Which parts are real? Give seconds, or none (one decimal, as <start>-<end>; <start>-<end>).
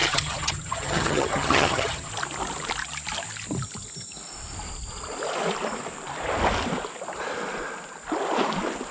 2.1-8.9